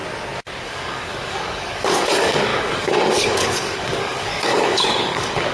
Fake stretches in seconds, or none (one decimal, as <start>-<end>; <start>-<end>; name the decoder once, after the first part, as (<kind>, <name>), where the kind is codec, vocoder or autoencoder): 0.6-5.5 (codec, DAC)